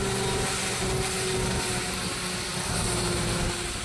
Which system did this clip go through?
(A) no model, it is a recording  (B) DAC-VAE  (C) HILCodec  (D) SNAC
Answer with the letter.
A